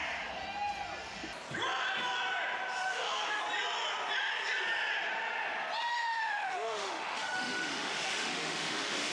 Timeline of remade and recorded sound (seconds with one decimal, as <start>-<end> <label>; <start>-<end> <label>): 0.0-2.8 recorded; 2.8-3.4 remade; 3.4-5.9 recorded; 5.9-9.1 remade

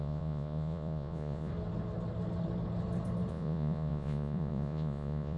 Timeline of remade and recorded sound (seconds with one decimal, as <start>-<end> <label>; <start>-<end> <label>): 0.0-1.5 remade; 1.5-3.3 recorded; 3.3-5.4 remade

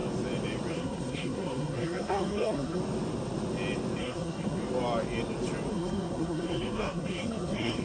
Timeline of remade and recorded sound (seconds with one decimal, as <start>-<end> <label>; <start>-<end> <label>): 0.0-0.7 recorded; 0.7-2.8 remade; 2.8-4.0 recorded; 4.0-4.6 remade; 4.6-5.7 recorded; 5.7-7.8 remade

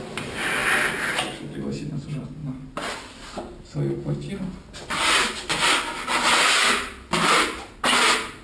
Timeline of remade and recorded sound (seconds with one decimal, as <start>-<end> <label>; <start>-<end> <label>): 0.0-8.4 recorded